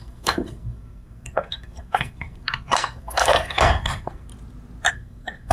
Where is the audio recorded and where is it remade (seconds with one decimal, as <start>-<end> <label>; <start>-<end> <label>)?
0.0-4.3 remade; 4.3-4.9 recorded; 4.9-5.5 remade